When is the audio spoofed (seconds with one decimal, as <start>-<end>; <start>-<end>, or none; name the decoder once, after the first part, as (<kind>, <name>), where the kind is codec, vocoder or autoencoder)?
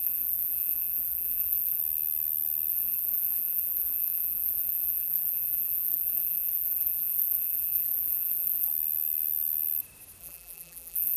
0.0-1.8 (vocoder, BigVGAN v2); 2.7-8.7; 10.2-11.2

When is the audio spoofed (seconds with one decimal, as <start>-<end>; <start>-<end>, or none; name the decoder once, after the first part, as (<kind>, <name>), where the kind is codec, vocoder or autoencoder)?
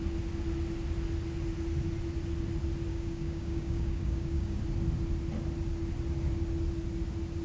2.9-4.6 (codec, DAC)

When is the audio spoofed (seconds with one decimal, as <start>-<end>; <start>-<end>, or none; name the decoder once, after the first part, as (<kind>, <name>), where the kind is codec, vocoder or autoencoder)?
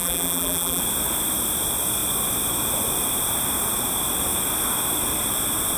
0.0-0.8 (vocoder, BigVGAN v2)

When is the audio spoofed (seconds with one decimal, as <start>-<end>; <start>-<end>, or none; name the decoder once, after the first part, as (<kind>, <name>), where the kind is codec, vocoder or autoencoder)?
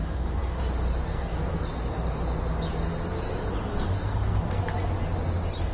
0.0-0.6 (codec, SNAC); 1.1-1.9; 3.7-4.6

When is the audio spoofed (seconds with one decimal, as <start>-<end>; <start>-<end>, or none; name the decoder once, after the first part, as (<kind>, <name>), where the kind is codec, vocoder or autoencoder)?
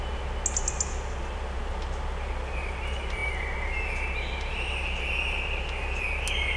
none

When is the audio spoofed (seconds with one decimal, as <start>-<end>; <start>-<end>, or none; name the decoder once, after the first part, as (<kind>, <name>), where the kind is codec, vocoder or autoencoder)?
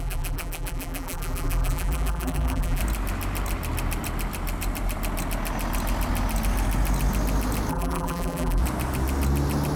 0.0-2.8 (vocoder, BigVGAN v2); 7.7-8.6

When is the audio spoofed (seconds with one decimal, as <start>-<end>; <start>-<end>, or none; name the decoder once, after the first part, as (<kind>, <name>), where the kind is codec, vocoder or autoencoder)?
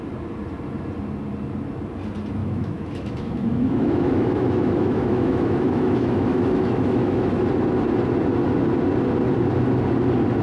2.4-7.3 (autoencoder, DAC-VAE)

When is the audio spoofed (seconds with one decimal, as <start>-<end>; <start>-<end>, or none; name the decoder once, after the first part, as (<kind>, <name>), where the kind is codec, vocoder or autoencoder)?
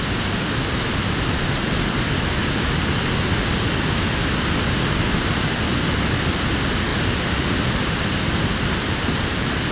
none